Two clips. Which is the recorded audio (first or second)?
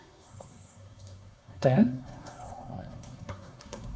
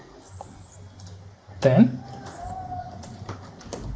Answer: second